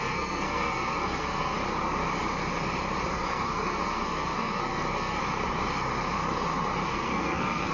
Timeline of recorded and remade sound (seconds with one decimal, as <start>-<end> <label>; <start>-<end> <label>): 0.0-1.5 remade; 1.5-3.1 recorded; 3.1-5.2 remade; 5.2-6.9 recorded; 6.9-7.7 remade